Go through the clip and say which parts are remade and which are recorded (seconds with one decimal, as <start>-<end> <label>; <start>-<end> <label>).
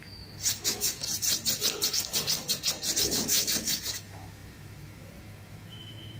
0.0-1.0 remade; 1.0-3.0 recorded; 3.0-6.2 remade